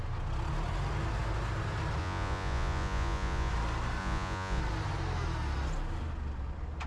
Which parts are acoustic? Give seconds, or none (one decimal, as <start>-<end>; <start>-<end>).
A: 0.0-2.0; 3.5-4.0; 4.6-6.9

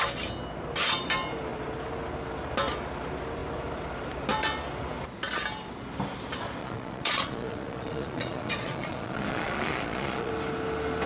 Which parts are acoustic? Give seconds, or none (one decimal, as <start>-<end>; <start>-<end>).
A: 0.0-6.6; 10.3-11.1

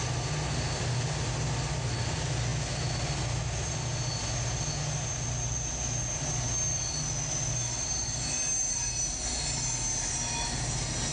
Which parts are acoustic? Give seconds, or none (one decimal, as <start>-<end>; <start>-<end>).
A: 0.0-11.1

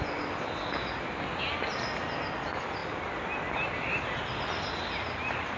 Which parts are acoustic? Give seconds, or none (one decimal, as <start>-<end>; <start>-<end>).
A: 0.0-5.6

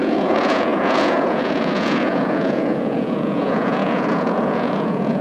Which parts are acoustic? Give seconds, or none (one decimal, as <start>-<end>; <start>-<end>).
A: none